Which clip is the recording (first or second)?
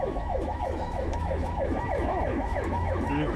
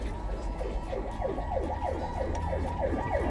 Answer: second